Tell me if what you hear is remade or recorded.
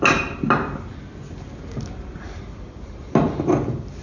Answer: recorded